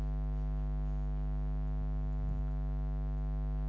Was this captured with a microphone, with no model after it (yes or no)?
yes